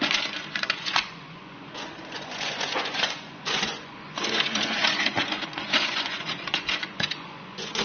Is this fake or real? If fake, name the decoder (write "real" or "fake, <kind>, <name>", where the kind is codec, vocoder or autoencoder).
fake, vocoder, Vocos